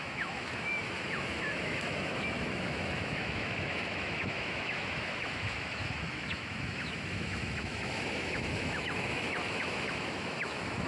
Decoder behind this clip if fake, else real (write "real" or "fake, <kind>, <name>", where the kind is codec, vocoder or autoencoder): fake, autoencoder, DAC-VAE